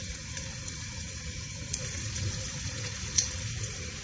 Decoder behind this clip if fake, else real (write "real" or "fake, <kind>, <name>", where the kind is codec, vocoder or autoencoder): fake, vocoder, Vocos